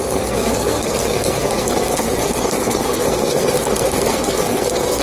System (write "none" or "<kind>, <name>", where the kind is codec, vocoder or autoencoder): codec, SNAC